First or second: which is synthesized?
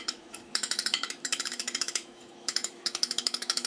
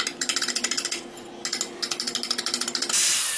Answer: first